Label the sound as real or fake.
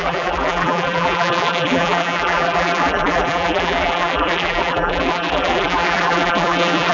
fake